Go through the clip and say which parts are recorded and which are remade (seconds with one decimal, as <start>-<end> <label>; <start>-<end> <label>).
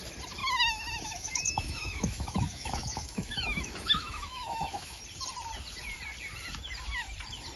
0.0-0.4 recorded; 0.4-5.0 remade; 5.0-7.6 recorded